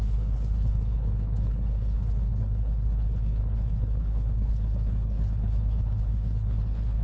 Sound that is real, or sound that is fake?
fake